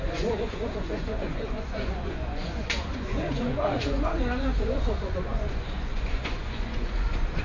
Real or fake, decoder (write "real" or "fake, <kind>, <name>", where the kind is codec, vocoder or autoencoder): fake, vocoder, Vocos